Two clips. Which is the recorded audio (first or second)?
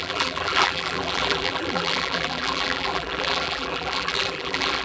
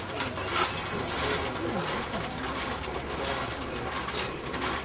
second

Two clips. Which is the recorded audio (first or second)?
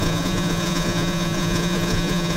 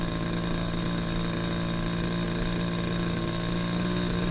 second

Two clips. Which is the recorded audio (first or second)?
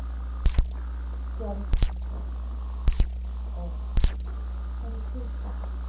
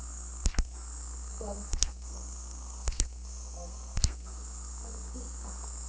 first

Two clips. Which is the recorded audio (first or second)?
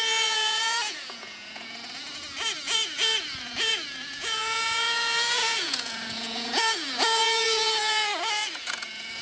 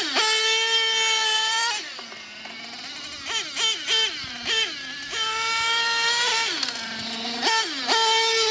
second